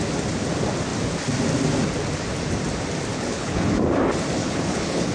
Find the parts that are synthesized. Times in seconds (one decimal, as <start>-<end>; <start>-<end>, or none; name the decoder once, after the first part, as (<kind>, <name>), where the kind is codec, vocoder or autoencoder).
3.1-3.7 (codec, HILCodec); 4.4-5.1